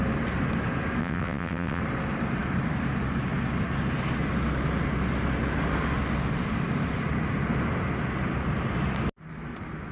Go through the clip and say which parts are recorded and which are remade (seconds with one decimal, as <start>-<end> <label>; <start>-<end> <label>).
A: 0.0-1.0 recorded; 1.0-1.8 remade; 1.8-9.9 recorded